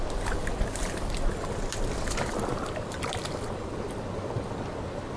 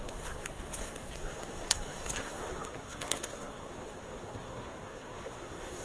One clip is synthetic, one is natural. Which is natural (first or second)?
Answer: first